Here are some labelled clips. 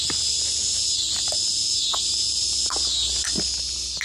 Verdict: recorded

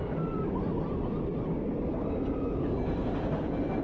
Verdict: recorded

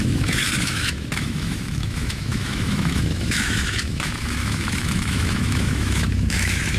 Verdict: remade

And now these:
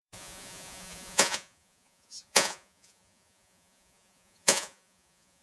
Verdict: remade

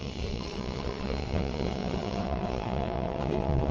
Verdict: remade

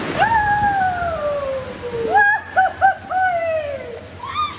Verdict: recorded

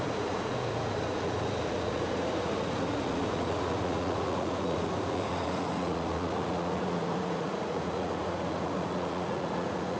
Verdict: remade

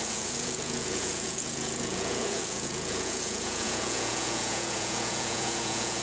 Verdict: remade